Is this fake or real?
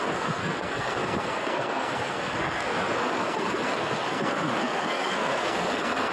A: fake